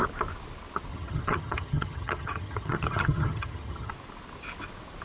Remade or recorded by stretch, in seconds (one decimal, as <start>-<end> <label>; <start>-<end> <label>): 0.0-0.9 recorded; 0.9-3.9 remade; 3.9-5.0 recorded